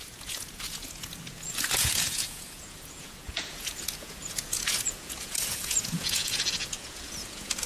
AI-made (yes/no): yes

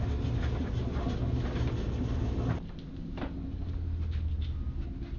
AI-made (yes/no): no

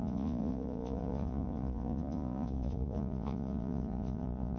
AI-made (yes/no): yes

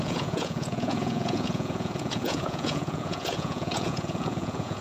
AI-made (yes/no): yes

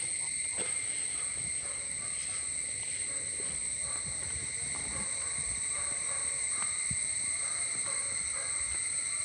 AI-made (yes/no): no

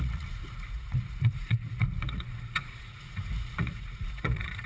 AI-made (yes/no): yes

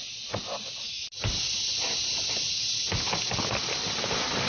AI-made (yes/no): no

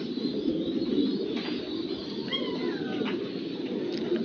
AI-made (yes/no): no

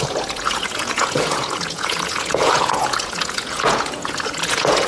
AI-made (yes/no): yes